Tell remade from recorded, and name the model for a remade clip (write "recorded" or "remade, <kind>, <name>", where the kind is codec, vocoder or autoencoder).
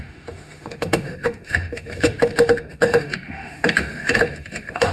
remade, autoencoder, DAC-VAE